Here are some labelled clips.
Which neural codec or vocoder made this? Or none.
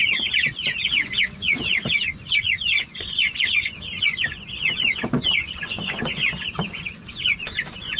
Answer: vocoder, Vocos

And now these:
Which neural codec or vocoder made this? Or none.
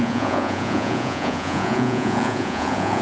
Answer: vocoder, Vocos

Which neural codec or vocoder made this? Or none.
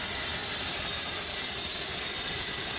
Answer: vocoder, BigVGAN v2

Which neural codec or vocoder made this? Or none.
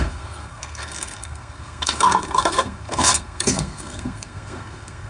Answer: codec, SNAC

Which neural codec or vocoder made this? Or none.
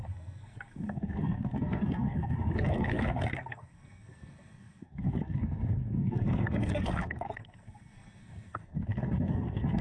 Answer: codec, SNAC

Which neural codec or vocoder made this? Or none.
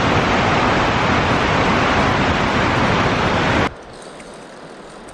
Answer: none